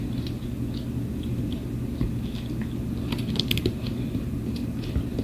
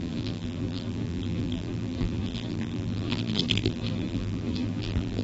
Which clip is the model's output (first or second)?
second